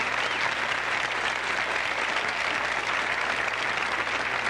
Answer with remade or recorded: recorded